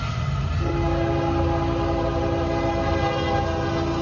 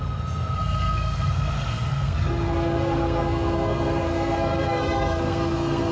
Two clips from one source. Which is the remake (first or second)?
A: second